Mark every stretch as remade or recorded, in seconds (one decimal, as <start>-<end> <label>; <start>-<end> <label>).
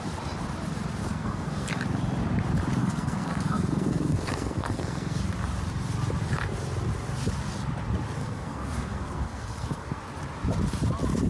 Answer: 0.0-1.0 recorded; 1.0-1.7 remade; 1.7-2.8 recorded; 2.8-5.2 remade; 5.2-8.2 recorded; 8.2-10.0 remade; 10.0-11.3 recorded